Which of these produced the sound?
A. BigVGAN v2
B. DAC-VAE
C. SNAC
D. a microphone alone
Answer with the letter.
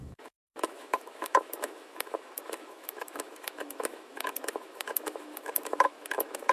B